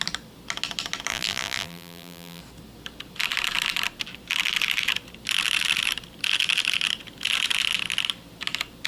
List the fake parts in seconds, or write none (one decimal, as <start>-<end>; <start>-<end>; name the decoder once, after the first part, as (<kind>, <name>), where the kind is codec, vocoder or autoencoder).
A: 1.1-2.4 (vocoder, BigVGAN v2)